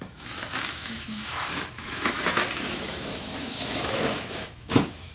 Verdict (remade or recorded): remade